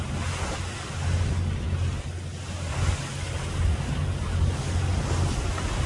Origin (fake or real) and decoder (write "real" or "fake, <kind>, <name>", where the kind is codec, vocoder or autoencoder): real